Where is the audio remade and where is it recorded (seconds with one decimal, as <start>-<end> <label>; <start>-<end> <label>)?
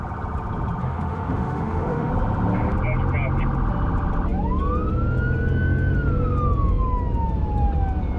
0.0-0.8 recorded; 0.8-2.1 remade; 2.1-8.2 recorded